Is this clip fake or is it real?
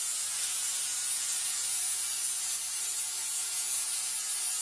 real